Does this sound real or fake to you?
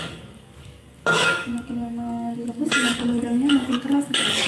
fake